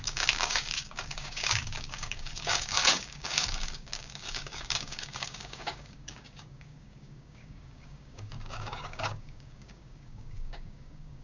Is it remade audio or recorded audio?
remade